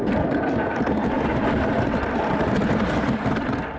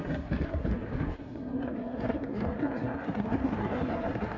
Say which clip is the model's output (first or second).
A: second